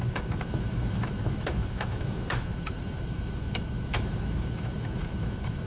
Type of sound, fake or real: fake